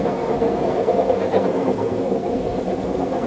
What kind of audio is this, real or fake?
fake